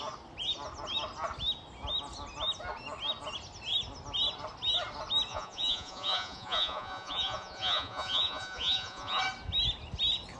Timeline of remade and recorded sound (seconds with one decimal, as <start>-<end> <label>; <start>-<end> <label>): 0.0-5.3 recorded; 5.3-9.2 remade; 9.2-10.4 recorded